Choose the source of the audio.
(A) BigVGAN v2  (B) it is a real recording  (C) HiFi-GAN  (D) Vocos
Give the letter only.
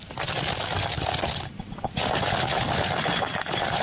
B